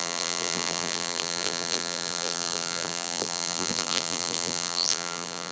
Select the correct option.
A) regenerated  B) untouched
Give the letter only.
A